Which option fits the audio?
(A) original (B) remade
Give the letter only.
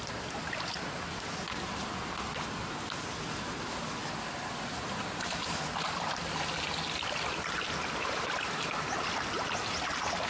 A